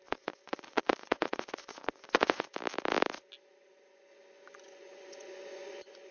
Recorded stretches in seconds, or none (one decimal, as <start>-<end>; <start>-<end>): 2.5-3.9